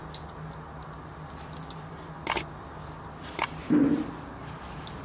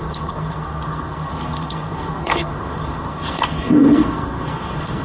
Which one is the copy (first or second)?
second